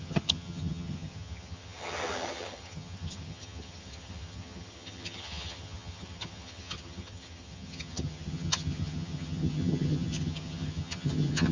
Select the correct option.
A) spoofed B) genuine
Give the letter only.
A